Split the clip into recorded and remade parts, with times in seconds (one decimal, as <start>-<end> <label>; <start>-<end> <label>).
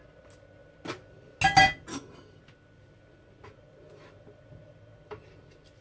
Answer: 0.0-1.9 recorded; 1.9-2.4 remade; 2.4-5.8 recorded